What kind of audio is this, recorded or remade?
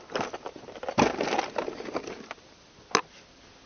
recorded